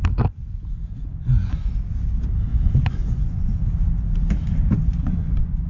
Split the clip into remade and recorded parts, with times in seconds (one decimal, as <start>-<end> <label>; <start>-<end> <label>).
0.0-1.0 recorded; 1.0-1.7 remade; 1.7-2.5 recorded; 2.5-3.6 remade; 3.6-4.8 recorded; 4.8-5.7 remade